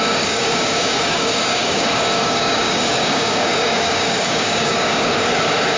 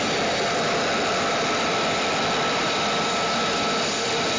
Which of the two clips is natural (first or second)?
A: second